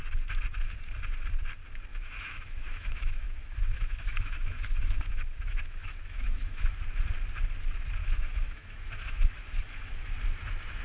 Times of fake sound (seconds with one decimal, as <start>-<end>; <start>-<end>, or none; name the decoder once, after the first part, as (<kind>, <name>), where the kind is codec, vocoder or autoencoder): 1.9-6.7 (autoencoder, DAC-VAE); 8.0-10.1